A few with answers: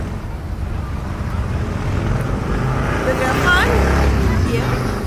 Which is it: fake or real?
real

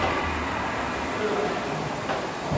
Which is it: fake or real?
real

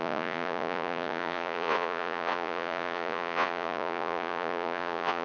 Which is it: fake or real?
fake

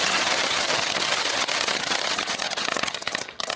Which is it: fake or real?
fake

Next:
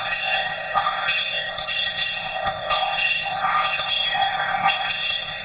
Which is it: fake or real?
fake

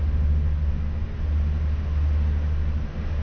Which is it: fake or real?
real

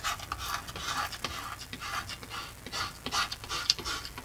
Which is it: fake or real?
real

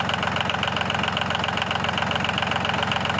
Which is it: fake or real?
real